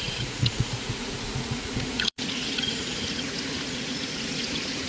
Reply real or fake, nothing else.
fake